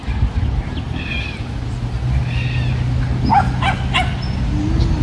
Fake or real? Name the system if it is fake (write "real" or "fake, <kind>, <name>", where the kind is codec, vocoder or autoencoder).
real